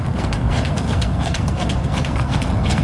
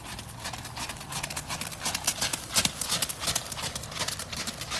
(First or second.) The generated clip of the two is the first